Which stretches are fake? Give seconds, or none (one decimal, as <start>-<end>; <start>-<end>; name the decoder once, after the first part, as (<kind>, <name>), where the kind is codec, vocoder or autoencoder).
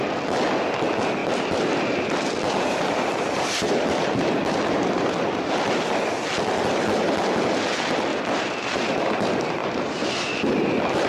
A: 1.2-5.5 (vocoder, BigVGAN v2); 8.1-9.1; 9.6-11.1